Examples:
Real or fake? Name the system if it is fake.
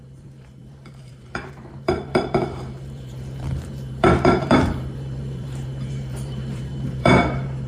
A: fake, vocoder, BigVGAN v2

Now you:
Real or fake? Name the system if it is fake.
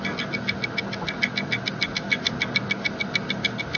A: real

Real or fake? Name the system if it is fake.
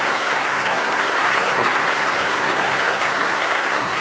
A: fake, codec, SNAC